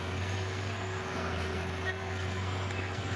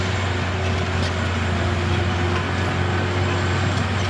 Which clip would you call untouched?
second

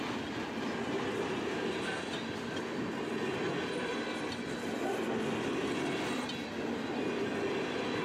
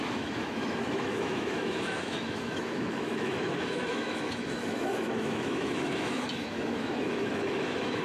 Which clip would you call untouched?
first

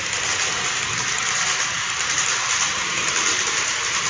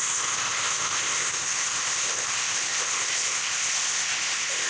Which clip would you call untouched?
first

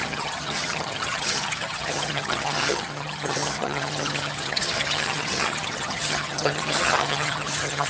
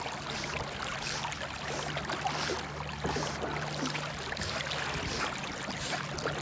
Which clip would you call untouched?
second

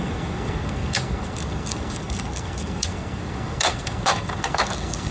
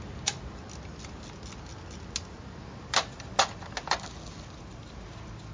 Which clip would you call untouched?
second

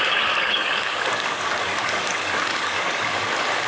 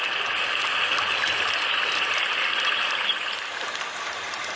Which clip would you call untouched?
second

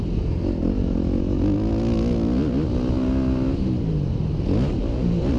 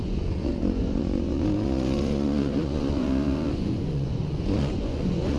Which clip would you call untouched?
first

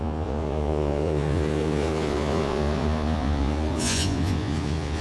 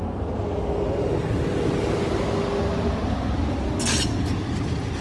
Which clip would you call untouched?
second